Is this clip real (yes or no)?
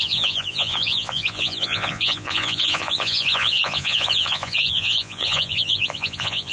no